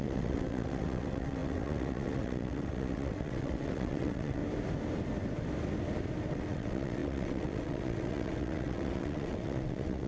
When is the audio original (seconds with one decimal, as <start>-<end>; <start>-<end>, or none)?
4.4-6.3